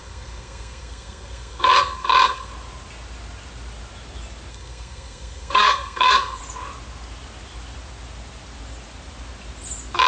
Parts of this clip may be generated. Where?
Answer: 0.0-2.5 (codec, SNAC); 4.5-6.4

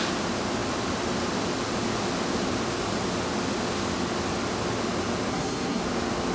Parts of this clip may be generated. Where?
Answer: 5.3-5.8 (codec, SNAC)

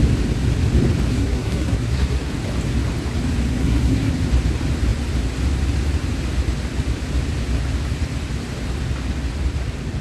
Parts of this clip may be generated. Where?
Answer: 1.1-2.3 (codec, SNAC); 3.5-4.1

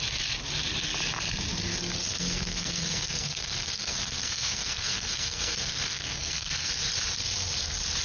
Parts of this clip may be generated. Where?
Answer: 2.1-6.7 (codec, SNAC)

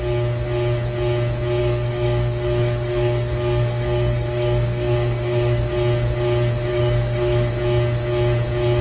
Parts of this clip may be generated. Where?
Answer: 1.6-5.6 (codec, SNAC); 6.7-7.5

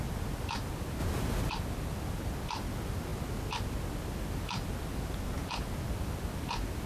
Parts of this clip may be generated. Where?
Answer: none

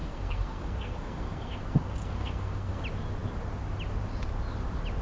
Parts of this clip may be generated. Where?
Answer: 0.0-2.8 (codec, SNAC)